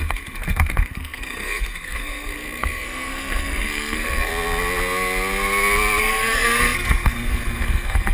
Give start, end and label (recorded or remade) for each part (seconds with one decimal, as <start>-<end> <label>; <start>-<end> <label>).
0.0-4.3 remade; 4.3-6.0 recorded; 6.0-8.1 remade